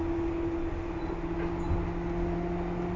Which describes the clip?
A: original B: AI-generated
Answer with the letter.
A